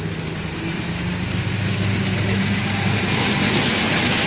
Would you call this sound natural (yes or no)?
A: yes